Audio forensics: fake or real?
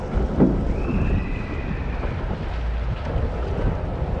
real